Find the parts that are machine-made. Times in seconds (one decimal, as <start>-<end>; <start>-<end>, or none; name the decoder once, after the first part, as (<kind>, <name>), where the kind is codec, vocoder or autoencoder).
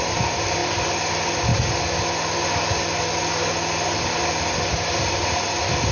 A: none